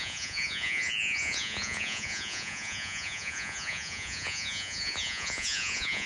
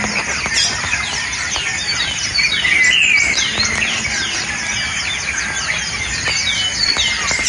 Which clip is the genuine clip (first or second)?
second